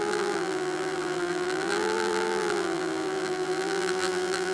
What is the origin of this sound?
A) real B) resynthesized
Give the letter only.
B